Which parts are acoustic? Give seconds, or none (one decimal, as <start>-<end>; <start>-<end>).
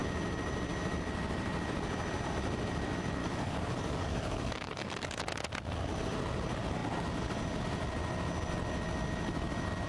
0.0-3.2; 5.2-9.9